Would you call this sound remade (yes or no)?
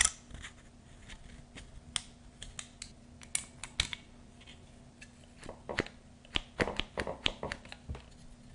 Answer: no